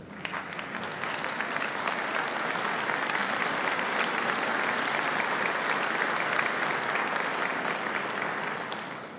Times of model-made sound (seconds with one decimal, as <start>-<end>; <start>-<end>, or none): 3.2-5.9